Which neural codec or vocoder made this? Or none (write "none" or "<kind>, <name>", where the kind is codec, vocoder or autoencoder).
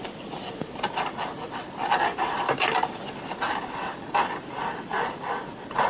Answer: none